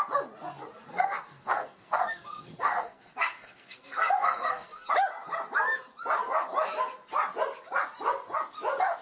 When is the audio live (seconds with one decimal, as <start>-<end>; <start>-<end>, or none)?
0.0-0.9; 4.9-9.0